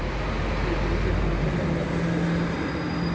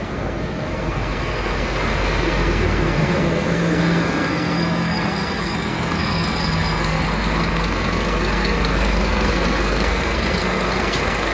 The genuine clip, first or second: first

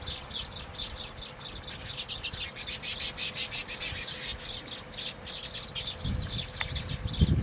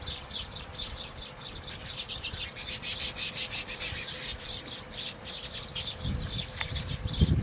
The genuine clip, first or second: first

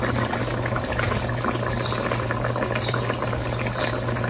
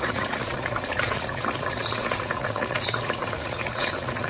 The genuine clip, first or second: first